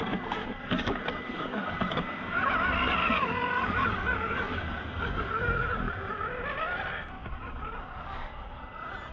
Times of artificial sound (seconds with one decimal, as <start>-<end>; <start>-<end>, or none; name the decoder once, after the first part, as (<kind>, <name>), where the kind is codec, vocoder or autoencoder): 0.4-2.5 (codec, DAC); 3.0-5.9; 7.2-8.6